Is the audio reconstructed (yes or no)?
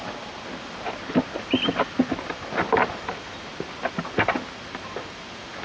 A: no